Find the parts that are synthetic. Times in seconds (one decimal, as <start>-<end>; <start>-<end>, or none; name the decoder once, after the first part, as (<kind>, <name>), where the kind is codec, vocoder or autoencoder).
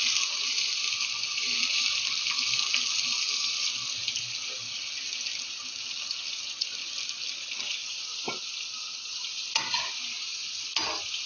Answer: 7.8-9.1 (vocoder, BigVGAN v2)